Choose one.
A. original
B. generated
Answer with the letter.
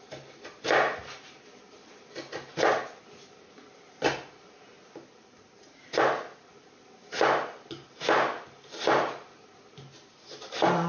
A